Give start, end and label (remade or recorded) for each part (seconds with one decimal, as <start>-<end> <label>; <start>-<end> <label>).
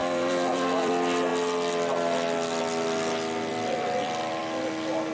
0.0-0.9 remade; 0.9-3.5 recorded; 3.5-4.4 remade; 4.4-5.1 recorded